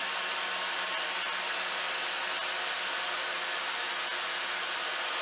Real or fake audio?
real